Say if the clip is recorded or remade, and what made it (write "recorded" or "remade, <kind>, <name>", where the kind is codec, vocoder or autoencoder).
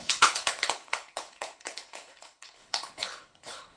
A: remade, codec, HILCodec